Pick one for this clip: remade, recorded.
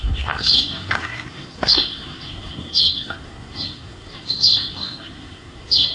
remade